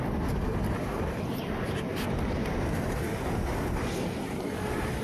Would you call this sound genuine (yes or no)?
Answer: yes